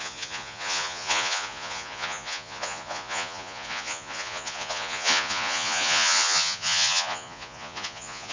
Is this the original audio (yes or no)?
no